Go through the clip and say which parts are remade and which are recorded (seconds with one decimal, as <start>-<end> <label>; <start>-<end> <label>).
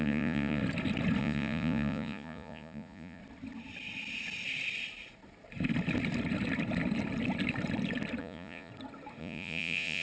0.0-0.6 remade; 0.6-1.2 recorded; 1.2-3.2 remade; 3.2-8.2 recorded; 8.2-8.7 remade; 8.7-9.2 recorded; 9.2-10.0 remade